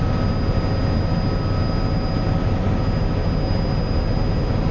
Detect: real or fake real